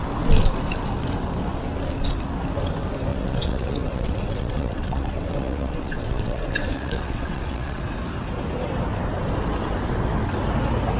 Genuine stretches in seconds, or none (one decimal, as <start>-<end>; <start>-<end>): 0.0-3.1; 7.8-11.0